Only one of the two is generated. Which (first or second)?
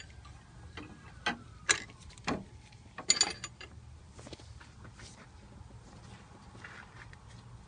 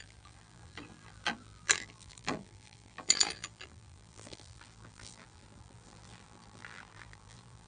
second